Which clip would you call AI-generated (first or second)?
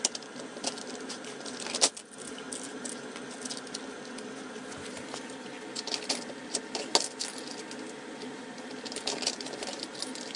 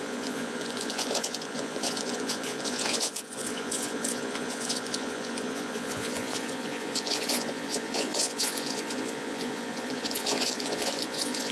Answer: second